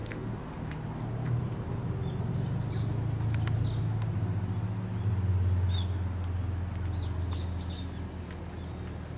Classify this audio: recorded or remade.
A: recorded